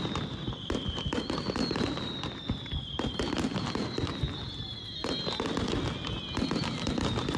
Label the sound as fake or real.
real